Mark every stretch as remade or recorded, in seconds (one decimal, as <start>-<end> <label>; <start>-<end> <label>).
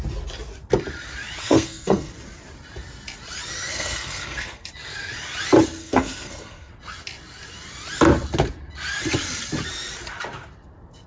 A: 0.0-1.4 recorded; 1.4-2.1 remade; 2.1-3.7 recorded; 3.7-4.7 remade; 4.7-5.8 recorded; 5.8-6.7 remade; 6.7-11.1 recorded